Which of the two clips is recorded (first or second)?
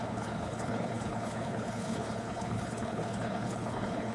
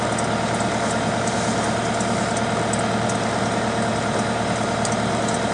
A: second